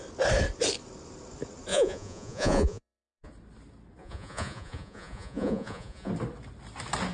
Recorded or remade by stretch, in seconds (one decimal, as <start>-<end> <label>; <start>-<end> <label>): 0.0-1.7 recorded; 1.7-3.3 remade; 3.3-4.0 recorded; 4.0-6.1 remade; 6.1-7.1 recorded

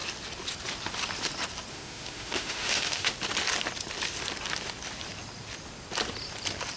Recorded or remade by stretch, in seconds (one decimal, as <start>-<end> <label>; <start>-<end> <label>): 0.0-1.7 recorded; 1.7-3.1 remade; 3.1-6.8 recorded

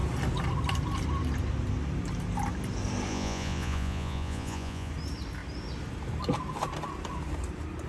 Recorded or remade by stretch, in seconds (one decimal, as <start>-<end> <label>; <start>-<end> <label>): 0.0-3.1 recorded; 3.1-4.9 remade; 4.9-7.9 recorded

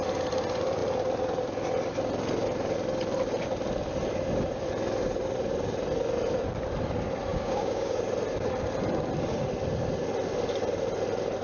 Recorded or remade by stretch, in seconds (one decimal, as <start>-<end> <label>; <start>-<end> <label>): 0.0-7.3 recorded; 7.3-8.0 remade; 8.0-11.4 recorded

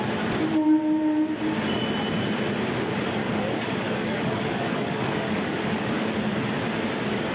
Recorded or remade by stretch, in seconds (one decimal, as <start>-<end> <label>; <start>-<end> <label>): 0.0-3.2 recorded; 3.2-6.1 remade; 6.1-7.3 recorded